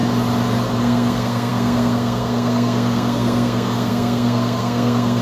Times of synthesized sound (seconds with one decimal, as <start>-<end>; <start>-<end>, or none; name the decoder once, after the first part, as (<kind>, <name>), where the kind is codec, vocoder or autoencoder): 0.8-5.2 (codec, SNAC)